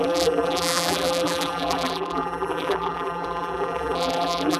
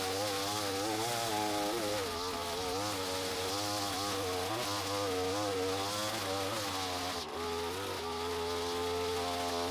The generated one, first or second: first